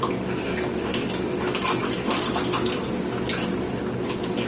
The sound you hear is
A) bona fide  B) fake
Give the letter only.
A